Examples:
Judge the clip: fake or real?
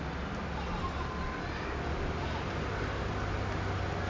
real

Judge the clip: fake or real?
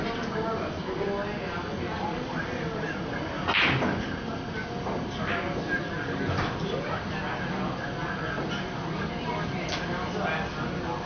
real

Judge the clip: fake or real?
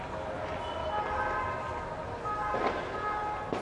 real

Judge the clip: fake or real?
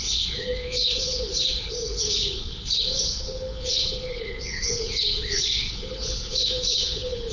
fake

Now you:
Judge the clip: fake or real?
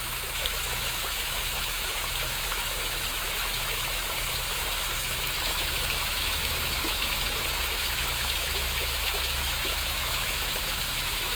fake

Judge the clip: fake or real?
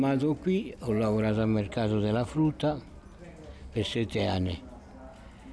real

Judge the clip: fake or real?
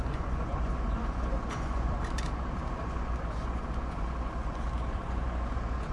fake